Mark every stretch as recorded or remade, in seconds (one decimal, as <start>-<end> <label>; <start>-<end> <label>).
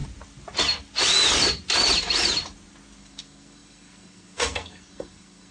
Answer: 0.0-3.0 recorded; 3.0-5.5 remade